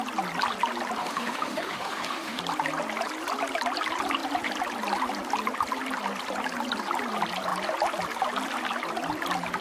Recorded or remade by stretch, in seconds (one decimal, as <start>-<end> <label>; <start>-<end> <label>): 0.0-1.0 recorded; 1.0-2.4 remade; 2.4-9.6 recorded